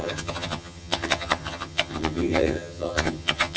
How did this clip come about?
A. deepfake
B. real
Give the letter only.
A